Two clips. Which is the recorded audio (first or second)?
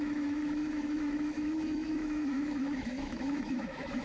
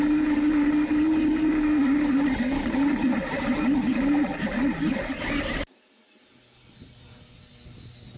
second